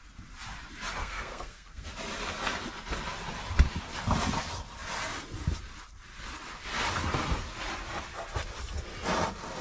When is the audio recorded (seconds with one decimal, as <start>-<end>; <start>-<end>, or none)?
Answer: 0.0-1.0; 1.9-9.6